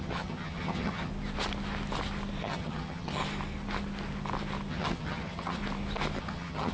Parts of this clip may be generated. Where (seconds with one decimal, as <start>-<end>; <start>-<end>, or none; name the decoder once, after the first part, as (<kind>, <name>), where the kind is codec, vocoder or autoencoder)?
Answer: 0.0-1.1 (vocoder, HiFi-GAN); 2.4-3.2; 4.7-5.6; 6.2-6.7